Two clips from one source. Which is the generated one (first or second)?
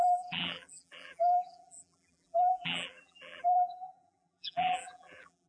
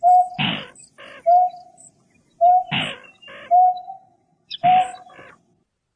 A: first